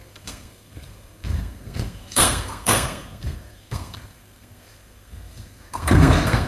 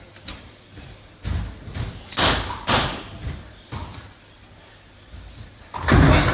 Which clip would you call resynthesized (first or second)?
first